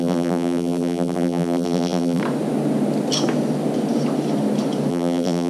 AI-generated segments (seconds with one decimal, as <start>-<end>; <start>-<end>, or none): 0.0-2.2; 4.9-5.5